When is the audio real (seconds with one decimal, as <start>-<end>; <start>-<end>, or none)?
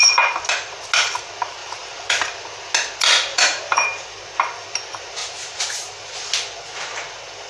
0.0-1.6; 2.4-3.3; 4.2-7.5